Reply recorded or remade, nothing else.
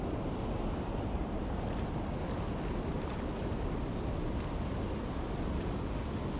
recorded